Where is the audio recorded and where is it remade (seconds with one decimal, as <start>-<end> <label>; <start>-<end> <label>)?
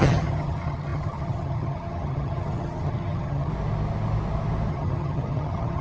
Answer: 0.0-3.5 remade; 3.5-4.7 recorded; 4.7-5.8 remade